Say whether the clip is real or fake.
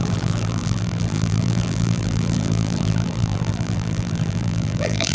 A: fake